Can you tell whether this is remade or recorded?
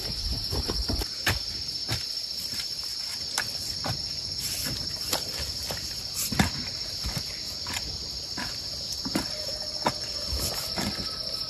recorded